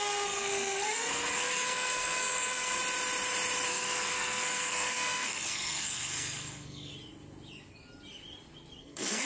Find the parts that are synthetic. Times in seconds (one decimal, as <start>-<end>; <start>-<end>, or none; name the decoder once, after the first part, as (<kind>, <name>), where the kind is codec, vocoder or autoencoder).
0.0-2.8 (codec, SNAC); 3.7-6.9; 8.8-9.3